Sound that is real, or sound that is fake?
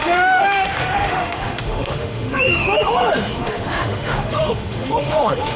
fake